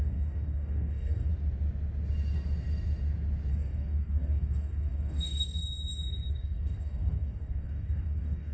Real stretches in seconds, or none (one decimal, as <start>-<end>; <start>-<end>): 1.3-3.5; 5.6-6.3